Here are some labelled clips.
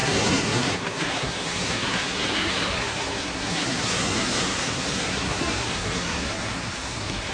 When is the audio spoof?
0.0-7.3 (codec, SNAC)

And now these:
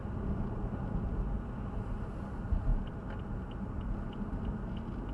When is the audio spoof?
none

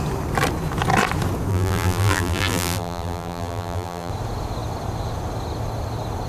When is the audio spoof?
1.5-4.1 (vocoder, BigVGAN v2)

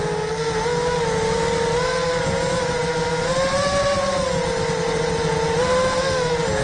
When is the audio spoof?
none

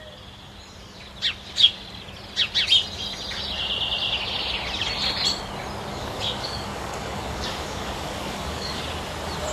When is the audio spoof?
5.9-8.8 (codec, DAC)

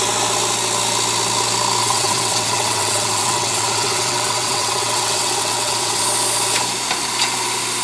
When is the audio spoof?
1.8-6.0 (vocoder, WaveNeXt)

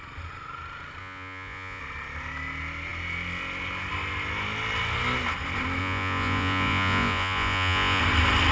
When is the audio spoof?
1.0-1.8 (vocoder, Vocos); 5.8-8.0

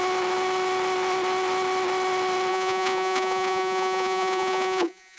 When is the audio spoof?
2.5-5.2 (vocoder, Vocos)